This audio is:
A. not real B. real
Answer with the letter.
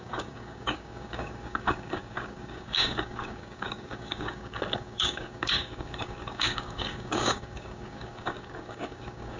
A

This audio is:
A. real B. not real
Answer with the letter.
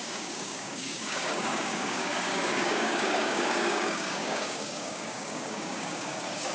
B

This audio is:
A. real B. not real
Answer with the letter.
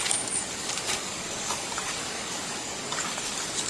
B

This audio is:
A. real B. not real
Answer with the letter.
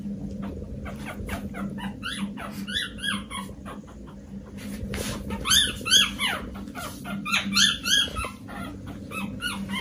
A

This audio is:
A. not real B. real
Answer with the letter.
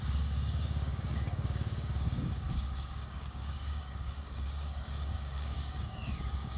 A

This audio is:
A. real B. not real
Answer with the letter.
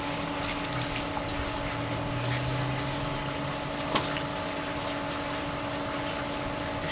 A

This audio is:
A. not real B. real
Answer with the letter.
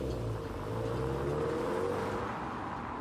B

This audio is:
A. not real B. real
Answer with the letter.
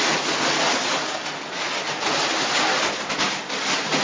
B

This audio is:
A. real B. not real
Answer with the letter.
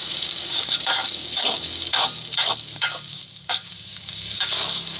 B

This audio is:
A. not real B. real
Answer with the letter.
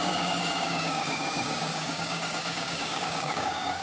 A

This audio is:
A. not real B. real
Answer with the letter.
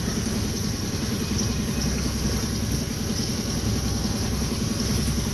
B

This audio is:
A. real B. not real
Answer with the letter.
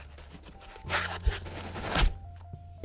A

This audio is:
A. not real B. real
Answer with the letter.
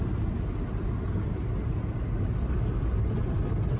B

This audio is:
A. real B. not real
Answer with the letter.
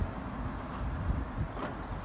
A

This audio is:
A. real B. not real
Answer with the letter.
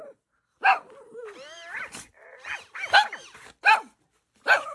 A